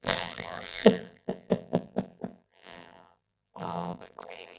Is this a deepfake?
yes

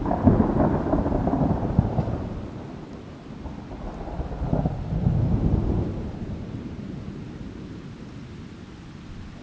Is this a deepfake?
no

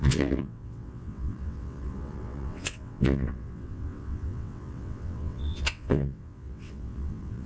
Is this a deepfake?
yes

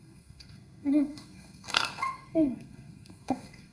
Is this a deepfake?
yes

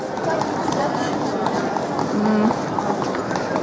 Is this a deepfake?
no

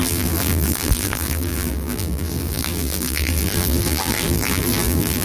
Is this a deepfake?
yes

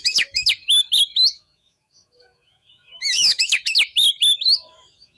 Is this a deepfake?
yes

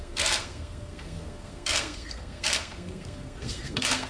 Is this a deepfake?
yes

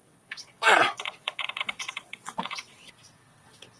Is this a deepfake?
yes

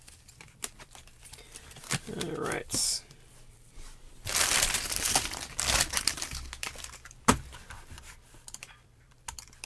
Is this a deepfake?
yes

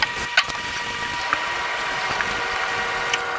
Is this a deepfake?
no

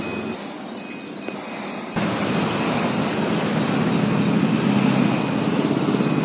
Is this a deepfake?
no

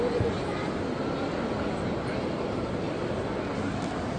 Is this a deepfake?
no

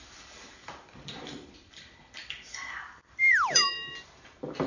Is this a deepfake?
yes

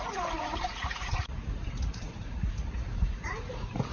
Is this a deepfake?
yes